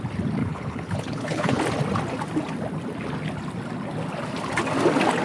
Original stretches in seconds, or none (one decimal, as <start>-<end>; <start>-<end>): 0.0-0.4; 1.6-5.2

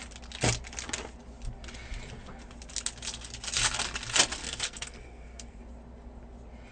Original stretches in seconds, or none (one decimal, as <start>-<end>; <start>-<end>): 0.0-4.4; 5.6-6.7

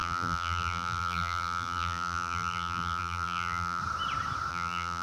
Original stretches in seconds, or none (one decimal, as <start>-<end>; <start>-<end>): 3.8-4.5

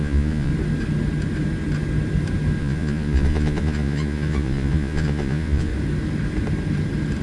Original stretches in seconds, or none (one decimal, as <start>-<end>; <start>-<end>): 0.5-2.6; 5.7-7.2